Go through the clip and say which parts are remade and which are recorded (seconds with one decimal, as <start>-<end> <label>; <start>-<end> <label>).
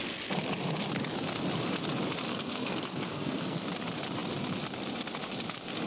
0.0-2.3 recorded; 2.3-3.6 remade; 3.6-5.9 recorded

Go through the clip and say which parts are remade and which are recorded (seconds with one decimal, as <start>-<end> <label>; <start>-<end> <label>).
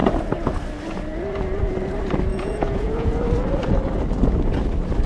0.0-2.3 recorded; 2.3-3.2 remade; 3.2-5.1 recorded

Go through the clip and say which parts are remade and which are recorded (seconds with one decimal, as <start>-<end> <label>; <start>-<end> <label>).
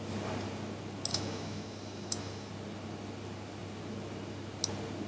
0.0-1.1 recorded; 1.1-2.5 remade; 2.5-5.1 recorded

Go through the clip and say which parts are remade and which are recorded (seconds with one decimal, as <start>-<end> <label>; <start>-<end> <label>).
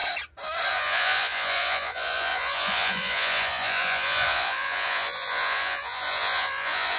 0.0-0.7 recorded; 0.7-7.0 remade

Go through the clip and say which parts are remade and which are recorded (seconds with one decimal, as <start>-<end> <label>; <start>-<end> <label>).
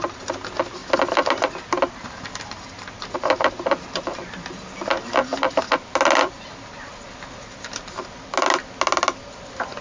0.0-9.8 recorded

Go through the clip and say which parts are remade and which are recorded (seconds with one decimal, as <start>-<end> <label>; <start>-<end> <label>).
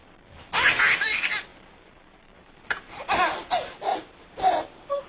0.0-1.5 recorded; 1.5-4.6 remade; 4.6-5.1 recorded